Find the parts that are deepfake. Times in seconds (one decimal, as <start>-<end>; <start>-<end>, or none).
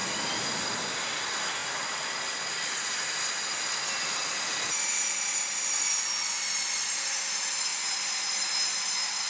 none